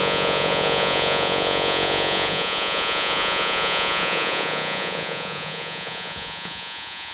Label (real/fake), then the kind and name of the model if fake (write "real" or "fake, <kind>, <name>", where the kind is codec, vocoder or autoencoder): fake, vocoder, Vocos